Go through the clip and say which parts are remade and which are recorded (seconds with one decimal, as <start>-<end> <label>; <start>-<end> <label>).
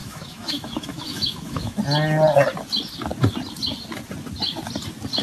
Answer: 0.0-1.8 remade; 1.8-5.2 recorded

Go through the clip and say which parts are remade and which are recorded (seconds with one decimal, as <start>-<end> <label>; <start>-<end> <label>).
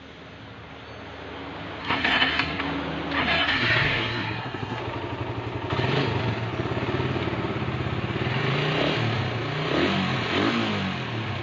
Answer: 0.0-1.8 recorded; 1.8-2.6 remade; 2.6-3.2 recorded; 3.2-4.8 remade; 4.8-11.4 recorded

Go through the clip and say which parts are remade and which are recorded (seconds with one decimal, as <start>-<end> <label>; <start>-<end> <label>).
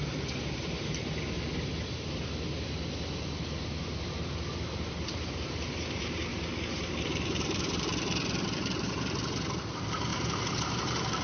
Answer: 0.0-1.7 remade; 1.7-4.1 recorded; 4.1-6.3 remade; 6.3-7.0 recorded; 7.0-11.2 remade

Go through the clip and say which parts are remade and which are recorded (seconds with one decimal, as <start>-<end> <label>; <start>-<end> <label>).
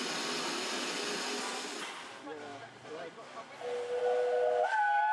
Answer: 0.0-5.1 recorded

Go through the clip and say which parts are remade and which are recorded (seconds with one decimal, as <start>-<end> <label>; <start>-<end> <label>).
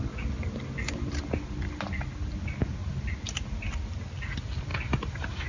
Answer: 0.0-5.5 recorded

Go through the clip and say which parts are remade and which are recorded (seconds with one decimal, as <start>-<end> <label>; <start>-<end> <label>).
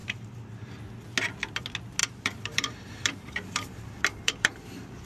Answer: 0.0-2.0 recorded; 2.0-5.1 remade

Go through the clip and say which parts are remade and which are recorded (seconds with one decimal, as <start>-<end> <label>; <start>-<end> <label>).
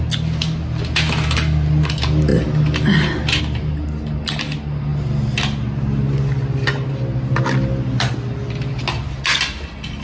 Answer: 0.0-10.0 recorded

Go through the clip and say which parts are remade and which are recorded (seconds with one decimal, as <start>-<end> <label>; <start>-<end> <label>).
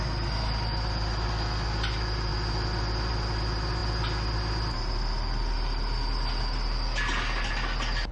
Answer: 0.0-8.1 recorded